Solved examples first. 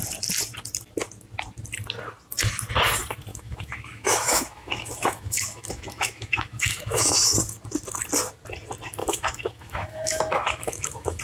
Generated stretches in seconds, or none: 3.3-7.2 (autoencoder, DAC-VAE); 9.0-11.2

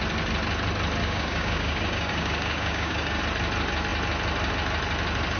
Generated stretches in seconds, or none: 1.0-3.2 (codec, DAC)

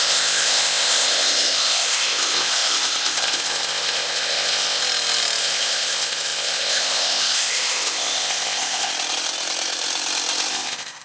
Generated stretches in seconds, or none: 0.0-4.8 (codec, ZipCodec); 5.4-8.9; 10.5-11.0